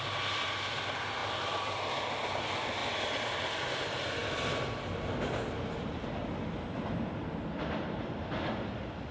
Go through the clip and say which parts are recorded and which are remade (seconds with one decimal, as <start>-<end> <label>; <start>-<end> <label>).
0.0-1.2 recorded; 1.2-2.0 remade; 2.0-9.1 recorded